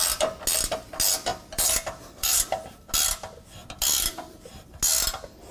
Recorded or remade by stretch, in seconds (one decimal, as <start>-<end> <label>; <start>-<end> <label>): 0.0-1.3 recorded; 1.3-2.9 remade; 2.9-5.5 recorded